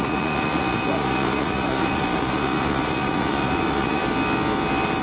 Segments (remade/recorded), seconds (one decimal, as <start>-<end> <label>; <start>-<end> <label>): 0.0-4.0 remade; 4.0-5.0 recorded